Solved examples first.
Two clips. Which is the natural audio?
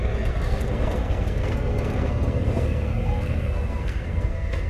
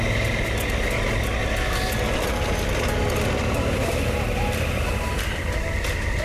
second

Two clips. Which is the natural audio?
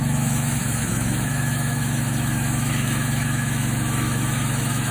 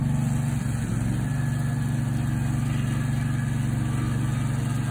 second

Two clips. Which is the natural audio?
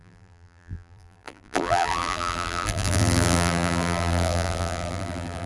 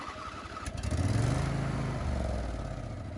second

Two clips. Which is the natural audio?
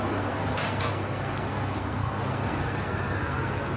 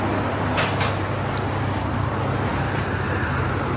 second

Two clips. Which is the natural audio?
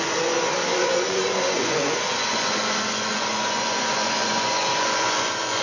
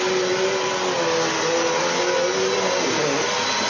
second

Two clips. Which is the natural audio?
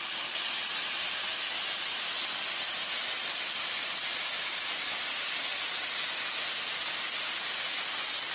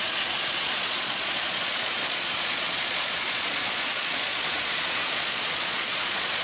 first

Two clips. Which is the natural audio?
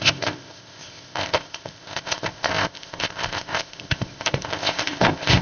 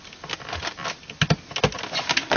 second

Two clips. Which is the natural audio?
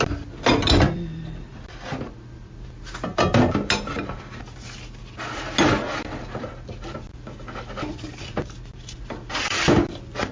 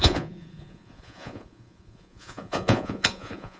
first